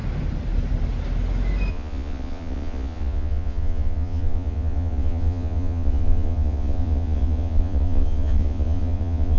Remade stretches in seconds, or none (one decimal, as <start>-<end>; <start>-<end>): 1.7-9.4